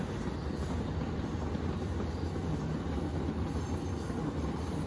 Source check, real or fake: real